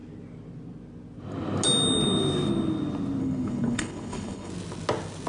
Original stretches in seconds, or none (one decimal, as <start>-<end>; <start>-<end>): 0.0-3.2; 4.5-5.3